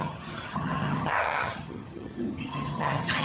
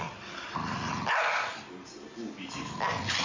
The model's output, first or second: first